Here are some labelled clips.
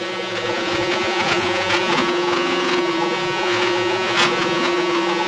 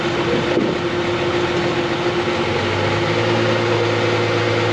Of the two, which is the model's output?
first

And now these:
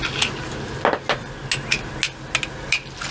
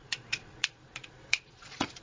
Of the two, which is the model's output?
second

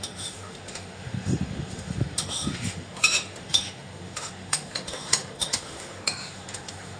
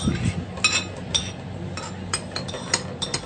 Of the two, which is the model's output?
first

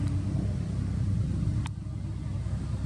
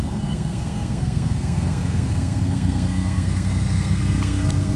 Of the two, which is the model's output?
second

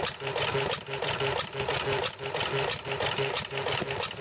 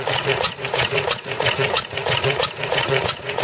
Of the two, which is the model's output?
second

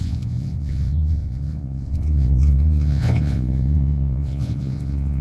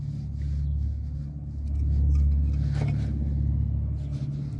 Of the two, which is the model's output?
first